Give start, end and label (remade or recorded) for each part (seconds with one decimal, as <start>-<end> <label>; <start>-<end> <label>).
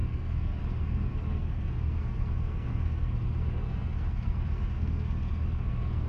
0.0-6.1 remade